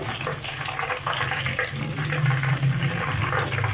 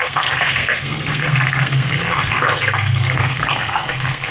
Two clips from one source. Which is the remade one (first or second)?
second